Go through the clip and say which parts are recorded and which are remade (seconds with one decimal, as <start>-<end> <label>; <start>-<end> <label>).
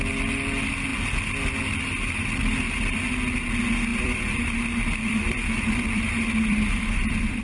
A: 0.0-3.9 recorded; 3.9-7.4 remade